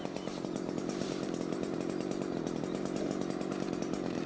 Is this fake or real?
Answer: fake